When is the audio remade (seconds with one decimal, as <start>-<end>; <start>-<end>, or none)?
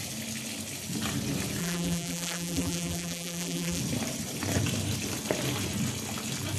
1.6-3.8